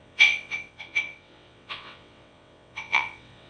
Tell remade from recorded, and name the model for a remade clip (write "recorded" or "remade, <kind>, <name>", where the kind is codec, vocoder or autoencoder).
remade, vocoder, WaveNeXt